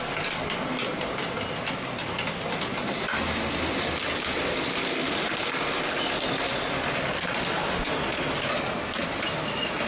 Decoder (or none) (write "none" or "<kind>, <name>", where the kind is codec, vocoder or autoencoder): none